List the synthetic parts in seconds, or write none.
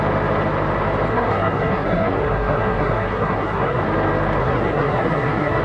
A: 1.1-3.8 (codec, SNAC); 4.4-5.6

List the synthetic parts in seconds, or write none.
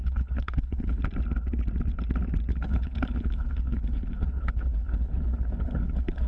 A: 0.0-1.0 (codec, HILCodec); 2.5-6.3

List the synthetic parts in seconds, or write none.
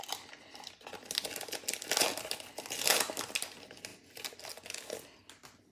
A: none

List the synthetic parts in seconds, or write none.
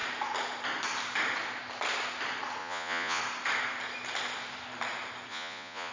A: 2.6-3.2 (vocoder, Vocos); 5.3-5.9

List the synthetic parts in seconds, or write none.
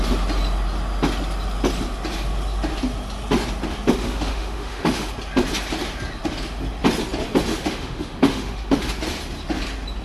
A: 4.0-5.1 (autoencoder, DAC-VAE); 7.5-8.9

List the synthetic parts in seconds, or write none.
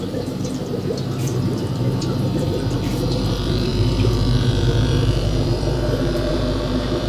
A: 0.0-0.6 (vocoder, BigVGAN v2); 1.2-7.1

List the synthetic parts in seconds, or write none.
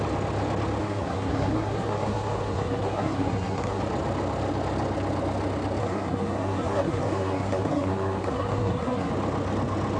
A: 0.8-3.8 (codec, SNAC); 5.8-9.1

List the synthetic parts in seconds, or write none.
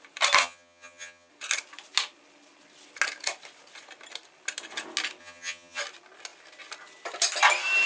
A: 0.4-1.3 (vocoder, HiFi-GAN); 5.2-5.8